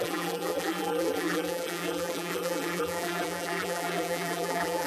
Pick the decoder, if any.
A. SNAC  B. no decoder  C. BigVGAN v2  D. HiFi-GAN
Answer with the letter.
C